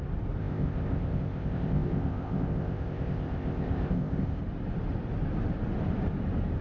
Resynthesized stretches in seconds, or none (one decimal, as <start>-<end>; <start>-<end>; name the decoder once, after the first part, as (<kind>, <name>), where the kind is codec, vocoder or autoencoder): 0.4-4.4 (codec, ZipCodec)